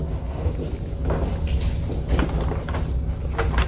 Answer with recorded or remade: recorded